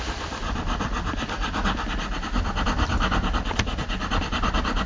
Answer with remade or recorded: recorded